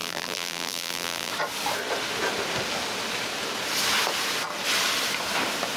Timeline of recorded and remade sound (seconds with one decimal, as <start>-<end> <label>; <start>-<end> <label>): 0.0-1.3 remade; 1.3-5.8 recorded